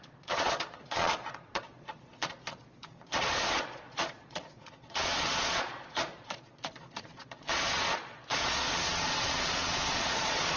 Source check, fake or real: fake